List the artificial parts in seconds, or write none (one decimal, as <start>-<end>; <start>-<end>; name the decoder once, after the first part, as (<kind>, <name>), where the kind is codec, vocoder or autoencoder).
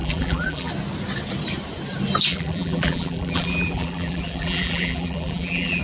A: 0.0-0.7 (vocoder, BigVGAN v2); 2.3-5.8